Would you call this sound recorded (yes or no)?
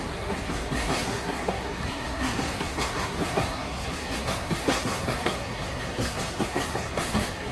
no